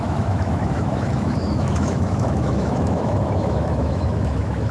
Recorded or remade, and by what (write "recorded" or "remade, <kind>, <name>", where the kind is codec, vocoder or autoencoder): remade, autoencoder, DAC-VAE